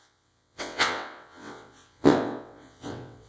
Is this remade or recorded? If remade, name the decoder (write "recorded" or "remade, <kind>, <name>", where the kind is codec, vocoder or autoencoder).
remade, vocoder, WaveNeXt